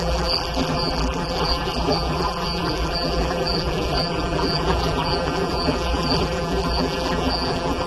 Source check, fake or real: fake